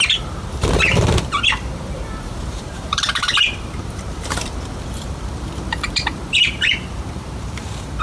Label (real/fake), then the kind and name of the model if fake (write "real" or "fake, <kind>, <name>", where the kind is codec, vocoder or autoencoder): fake, vocoder, BigVGAN v2